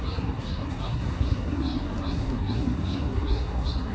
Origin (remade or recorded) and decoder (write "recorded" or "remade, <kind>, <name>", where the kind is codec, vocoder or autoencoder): remade, codec, SNAC